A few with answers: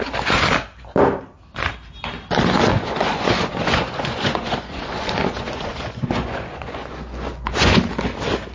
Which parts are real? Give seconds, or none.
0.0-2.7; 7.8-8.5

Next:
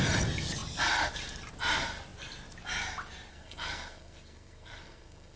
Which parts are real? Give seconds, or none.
0.0-3.3

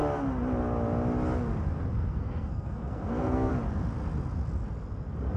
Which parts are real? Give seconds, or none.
0.0-1.9; 3.5-5.4

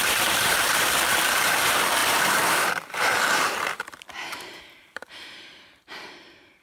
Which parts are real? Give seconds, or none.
none

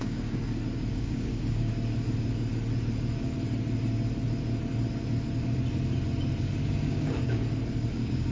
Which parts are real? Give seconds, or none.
0.4-0.9; 1.7-6.4; 7.4-7.9

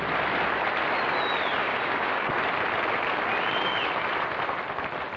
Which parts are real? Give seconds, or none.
0.0-1.6; 2.3-5.2

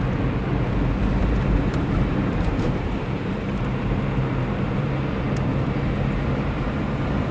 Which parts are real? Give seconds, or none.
0.0-1.2; 5.0-5.5

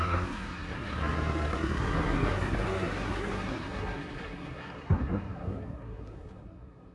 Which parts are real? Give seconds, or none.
none